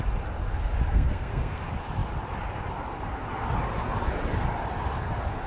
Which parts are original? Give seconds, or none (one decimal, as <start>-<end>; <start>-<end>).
0.0-0.9; 1.6-5.5